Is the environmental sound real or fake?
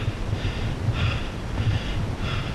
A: fake